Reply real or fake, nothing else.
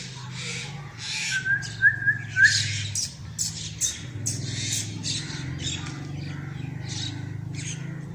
real